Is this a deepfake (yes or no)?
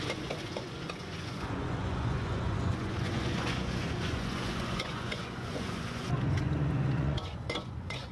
yes